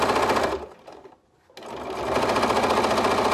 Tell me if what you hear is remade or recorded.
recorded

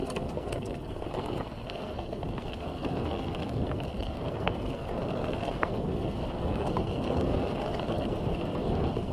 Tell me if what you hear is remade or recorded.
remade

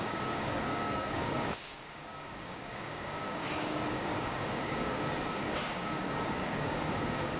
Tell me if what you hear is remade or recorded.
remade